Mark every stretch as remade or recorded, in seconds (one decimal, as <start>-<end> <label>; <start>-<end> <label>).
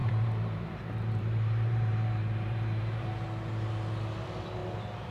0.0-3.1 remade; 3.1-5.1 recorded